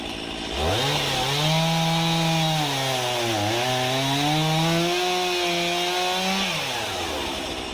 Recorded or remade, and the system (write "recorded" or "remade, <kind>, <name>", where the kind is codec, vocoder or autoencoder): recorded